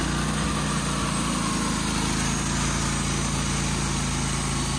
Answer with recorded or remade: recorded